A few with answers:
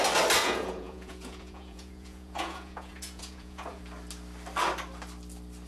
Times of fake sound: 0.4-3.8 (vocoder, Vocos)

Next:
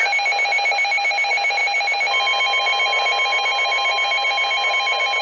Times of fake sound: none

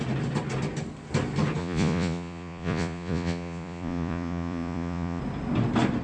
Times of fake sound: 1.6-5.2 (vocoder, Vocos)

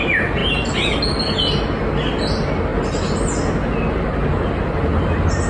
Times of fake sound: none